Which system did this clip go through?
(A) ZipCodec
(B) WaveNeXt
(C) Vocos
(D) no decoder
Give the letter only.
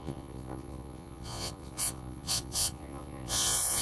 C